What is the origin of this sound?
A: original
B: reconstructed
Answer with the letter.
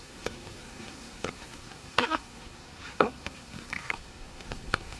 B